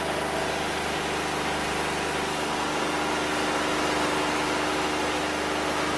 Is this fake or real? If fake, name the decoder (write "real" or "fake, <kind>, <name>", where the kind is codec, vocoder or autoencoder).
real